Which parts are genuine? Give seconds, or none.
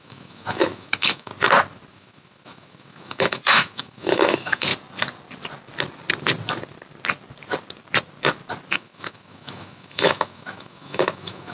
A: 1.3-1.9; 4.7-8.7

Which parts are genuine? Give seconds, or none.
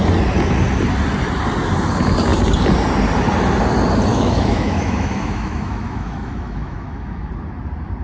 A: 0.0-4.1; 7.3-8.0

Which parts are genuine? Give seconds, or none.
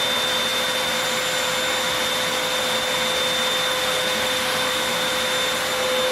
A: 0.0-3.7; 4.7-6.1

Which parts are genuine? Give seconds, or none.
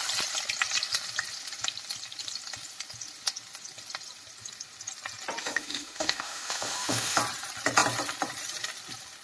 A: 0.0-5.4; 7.2-9.2